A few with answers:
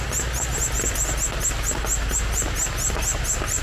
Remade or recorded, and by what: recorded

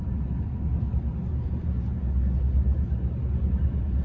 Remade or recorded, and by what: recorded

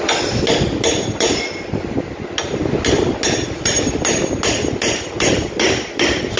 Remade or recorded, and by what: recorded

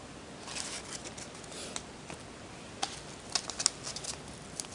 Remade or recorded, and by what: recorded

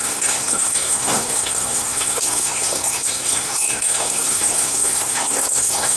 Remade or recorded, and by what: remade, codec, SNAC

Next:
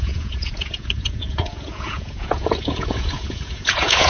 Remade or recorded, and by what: remade, vocoder, Vocos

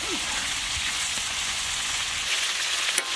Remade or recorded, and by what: remade, vocoder, Vocos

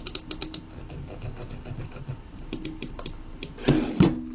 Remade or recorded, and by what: recorded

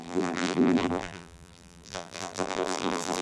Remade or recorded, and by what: remade, vocoder, BigVGAN v2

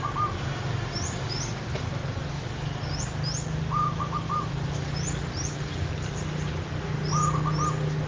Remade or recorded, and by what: recorded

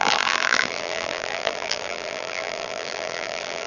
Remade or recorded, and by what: remade, vocoder, BigVGAN v2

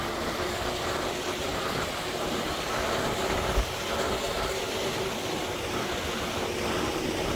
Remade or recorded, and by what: recorded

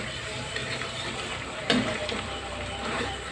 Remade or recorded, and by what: remade, vocoder, BigVGAN v2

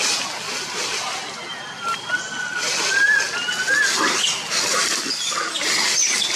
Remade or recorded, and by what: recorded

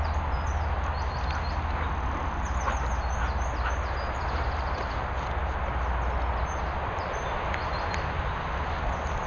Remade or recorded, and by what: recorded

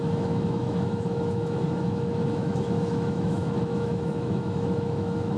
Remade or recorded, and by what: remade, autoencoder, DAC-VAE